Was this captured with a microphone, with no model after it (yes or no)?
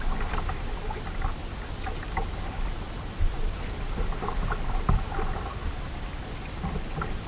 yes